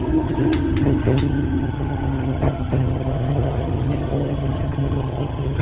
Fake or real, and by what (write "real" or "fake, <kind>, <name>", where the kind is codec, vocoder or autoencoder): fake, vocoder, HiFi-GAN